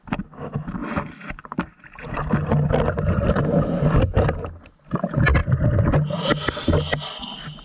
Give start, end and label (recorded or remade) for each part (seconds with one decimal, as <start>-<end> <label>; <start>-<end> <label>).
0.0-7.6 recorded